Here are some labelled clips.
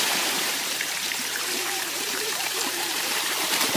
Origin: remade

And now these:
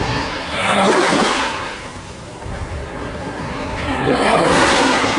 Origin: remade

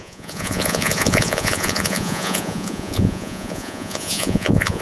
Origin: remade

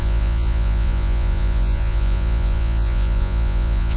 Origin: remade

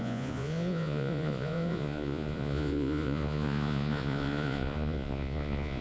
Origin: remade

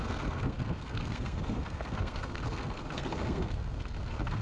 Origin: remade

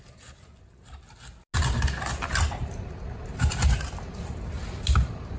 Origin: recorded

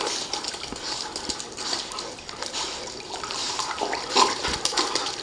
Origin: recorded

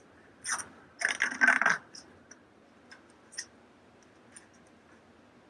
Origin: recorded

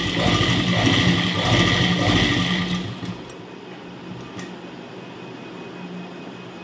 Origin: recorded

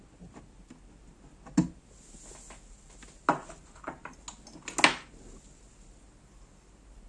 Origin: recorded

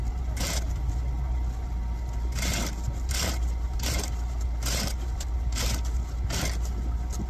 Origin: recorded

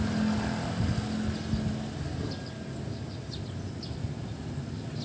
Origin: recorded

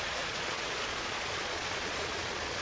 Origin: remade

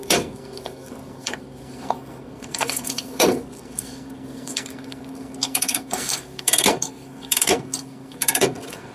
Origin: remade